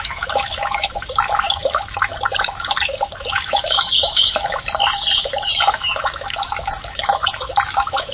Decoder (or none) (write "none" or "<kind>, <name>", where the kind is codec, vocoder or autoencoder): autoencoder, DAC-VAE